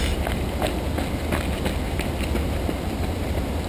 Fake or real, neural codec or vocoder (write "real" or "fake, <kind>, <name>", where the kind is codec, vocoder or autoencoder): real